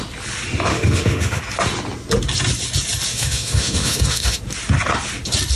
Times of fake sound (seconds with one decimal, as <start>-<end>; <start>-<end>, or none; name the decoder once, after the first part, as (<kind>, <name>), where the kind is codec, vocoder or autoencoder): 0.7-1.4 (autoencoder, DAC-VAE); 3.1-4.4